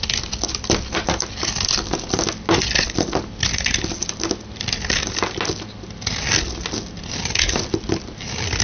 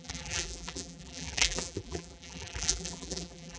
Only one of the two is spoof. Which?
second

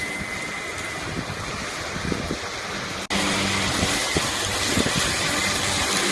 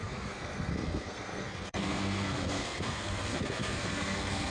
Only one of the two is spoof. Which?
second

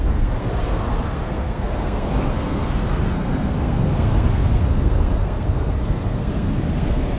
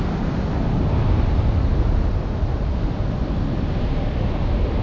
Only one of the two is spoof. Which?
first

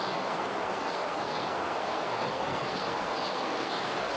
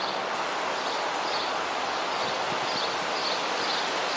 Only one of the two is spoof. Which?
first